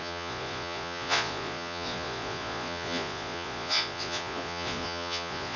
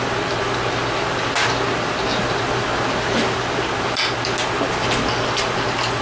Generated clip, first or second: first